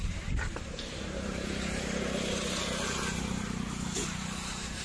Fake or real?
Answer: fake